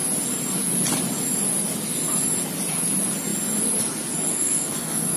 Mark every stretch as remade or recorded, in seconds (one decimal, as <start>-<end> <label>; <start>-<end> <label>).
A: 0.0-4.3 recorded; 4.3-5.2 remade